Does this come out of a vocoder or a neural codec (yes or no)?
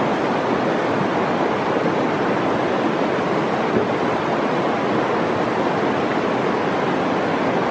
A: no